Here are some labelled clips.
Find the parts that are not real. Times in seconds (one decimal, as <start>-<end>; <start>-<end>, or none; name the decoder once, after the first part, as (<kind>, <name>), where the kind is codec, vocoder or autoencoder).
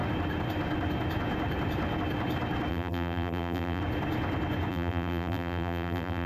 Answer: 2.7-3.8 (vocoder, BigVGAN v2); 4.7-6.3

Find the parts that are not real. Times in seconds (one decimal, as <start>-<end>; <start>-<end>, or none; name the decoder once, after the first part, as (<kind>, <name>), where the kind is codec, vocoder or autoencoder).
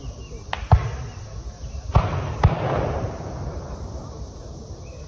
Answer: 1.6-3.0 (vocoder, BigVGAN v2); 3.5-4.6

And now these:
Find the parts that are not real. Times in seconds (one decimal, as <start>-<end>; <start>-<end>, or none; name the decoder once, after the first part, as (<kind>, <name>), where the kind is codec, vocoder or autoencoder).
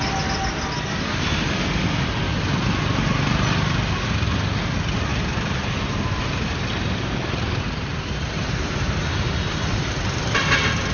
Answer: 5.1-9.6 (vocoder, BigVGAN v2)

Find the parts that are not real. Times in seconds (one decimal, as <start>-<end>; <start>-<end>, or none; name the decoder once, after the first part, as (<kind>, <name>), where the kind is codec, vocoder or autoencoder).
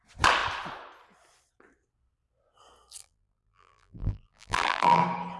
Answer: 3.0-5.0 (vocoder, BigVGAN v2)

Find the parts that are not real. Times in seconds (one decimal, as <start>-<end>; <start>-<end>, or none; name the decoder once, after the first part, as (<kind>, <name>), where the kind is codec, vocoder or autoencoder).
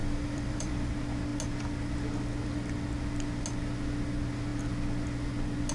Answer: 0.0-0.9 (vocoder, BigVGAN v2)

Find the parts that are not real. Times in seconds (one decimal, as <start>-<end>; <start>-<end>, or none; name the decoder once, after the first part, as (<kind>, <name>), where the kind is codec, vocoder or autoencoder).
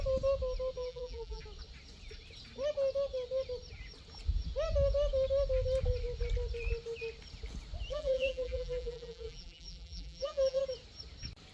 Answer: 0.8-1.4 (vocoder, BigVGAN v2); 7.9-10.6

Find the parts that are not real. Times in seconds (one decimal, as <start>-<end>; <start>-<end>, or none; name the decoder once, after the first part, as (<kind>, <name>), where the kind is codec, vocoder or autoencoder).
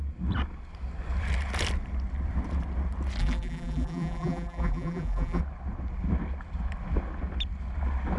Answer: 3.2-5.4 (vocoder, BigVGAN v2)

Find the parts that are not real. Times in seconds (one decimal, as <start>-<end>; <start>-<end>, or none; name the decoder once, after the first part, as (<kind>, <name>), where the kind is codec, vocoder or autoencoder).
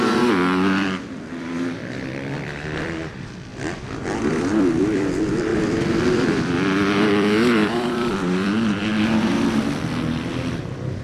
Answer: 0.0-3.5 (vocoder, BigVGAN v2); 4.3-11.0